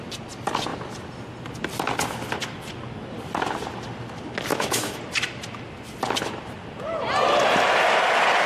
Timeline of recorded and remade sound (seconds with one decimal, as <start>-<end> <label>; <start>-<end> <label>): 0.0-4.5 recorded; 4.5-5.0 remade; 5.0-8.5 recorded